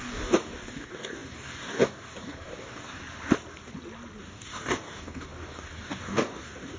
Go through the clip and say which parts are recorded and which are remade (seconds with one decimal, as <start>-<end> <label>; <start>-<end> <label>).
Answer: 0.0-3.0 remade; 3.0-4.2 recorded; 4.2-6.8 remade